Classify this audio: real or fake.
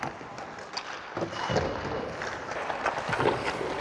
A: real